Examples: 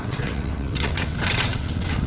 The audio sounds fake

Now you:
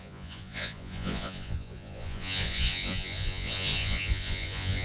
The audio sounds fake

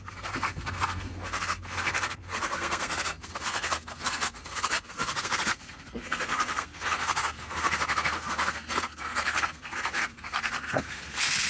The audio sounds fake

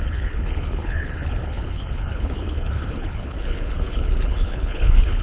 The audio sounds fake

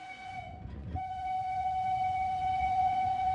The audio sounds fake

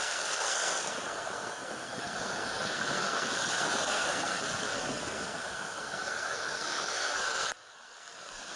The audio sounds fake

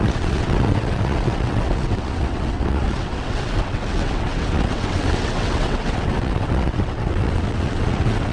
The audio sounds fake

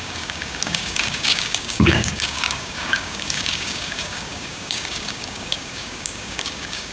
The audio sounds fake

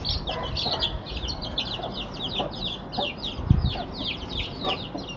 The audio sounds real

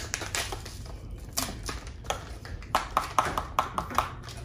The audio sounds real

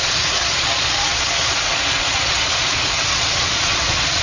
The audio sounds fake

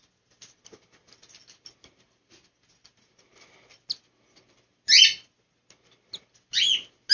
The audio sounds real